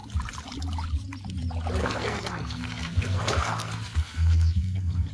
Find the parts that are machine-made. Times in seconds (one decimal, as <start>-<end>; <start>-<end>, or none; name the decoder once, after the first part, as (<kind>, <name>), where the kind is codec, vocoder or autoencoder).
1.8-5.1 (codec, SNAC)